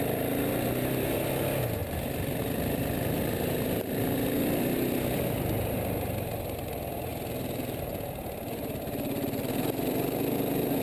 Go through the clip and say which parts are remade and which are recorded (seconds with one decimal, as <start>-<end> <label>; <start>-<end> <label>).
0.0-1.8 recorded; 1.8-2.4 remade; 2.4-10.8 recorded